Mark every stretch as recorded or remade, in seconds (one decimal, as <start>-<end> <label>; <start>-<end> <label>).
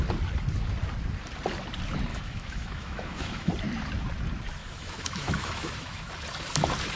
0.0-2.1 recorded; 2.1-3.5 remade; 3.5-4.6 recorded; 4.6-6.1 remade; 6.1-7.0 recorded